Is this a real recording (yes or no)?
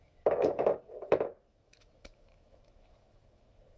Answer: no